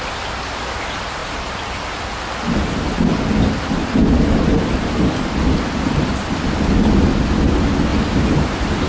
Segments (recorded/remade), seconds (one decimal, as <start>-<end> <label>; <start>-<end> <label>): 0.0-1.2 recorded; 1.2-2.1 remade; 2.1-7.9 recorded; 7.9-8.9 remade